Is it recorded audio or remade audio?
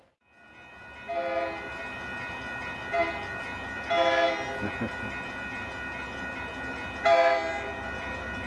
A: recorded